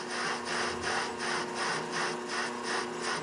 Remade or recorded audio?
recorded